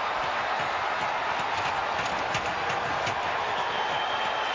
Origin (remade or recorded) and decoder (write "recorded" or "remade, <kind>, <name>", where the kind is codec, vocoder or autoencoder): recorded